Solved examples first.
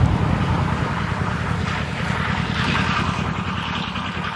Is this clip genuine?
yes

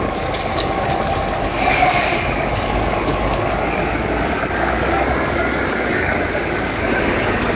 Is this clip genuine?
no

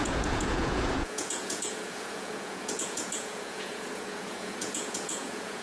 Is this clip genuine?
no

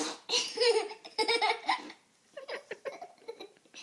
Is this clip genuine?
no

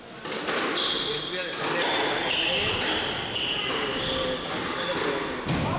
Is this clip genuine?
yes